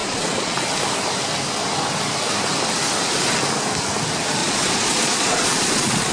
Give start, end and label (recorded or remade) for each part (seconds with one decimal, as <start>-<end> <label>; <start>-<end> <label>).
0.0-0.6 remade; 0.6-4.4 recorded; 4.4-6.1 remade

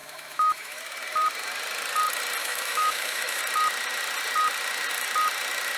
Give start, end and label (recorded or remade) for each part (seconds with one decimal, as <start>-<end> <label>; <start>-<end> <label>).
0.0-0.8 remade; 0.8-2.4 recorded; 2.4-3.4 remade; 3.4-5.8 recorded

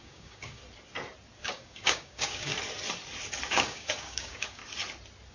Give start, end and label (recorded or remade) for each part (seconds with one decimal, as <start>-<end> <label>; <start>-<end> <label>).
0.0-0.6 remade; 0.6-1.4 recorded; 1.4-2.5 remade; 2.5-3.5 recorded; 3.5-4.6 remade; 4.6-5.3 recorded

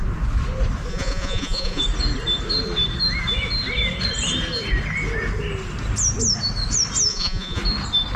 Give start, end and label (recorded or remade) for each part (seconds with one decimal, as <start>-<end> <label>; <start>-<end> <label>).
0.0-0.9 recorded; 0.9-1.8 remade; 1.8-7.1 recorded; 7.1-7.6 remade; 7.6-8.2 recorded

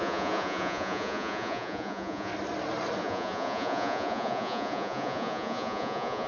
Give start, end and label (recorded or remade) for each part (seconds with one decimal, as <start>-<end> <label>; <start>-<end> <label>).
0.0-2.3 remade; 2.3-3.0 recorded; 3.0-6.3 remade

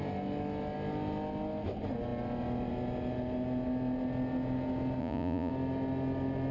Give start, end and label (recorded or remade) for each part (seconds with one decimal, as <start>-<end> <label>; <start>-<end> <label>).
0.0-5.0 recorded; 5.0-5.5 remade; 5.5-6.5 recorded

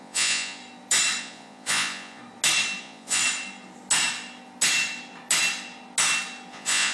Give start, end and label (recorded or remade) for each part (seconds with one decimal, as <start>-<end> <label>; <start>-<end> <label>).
0.0-0.6 remade; 0.6-1.2 recorded; 1.2-2.2 remade; 2.2-2.8 recorded; 2.8-3.2 remade; 3.2-6.5 recorded; 6.5-6.9 remade